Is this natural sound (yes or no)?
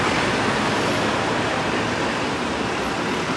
yes